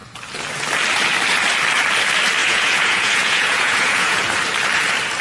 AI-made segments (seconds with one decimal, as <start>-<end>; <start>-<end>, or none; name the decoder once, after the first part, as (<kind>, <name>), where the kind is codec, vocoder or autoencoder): 2.4-4.3 (vocoder, Vocos)